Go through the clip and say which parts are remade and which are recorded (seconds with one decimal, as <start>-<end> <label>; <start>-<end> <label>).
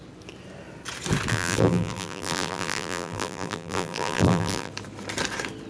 0.0-1.3 recorded; 1.3-4.7 remade; 4.7-5.7 recorded